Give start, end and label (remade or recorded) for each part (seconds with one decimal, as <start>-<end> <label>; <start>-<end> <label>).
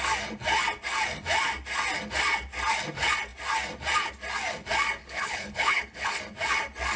0.0-5.0 recorded; 5.0-6.2 remade; 6.2-7.0 recorded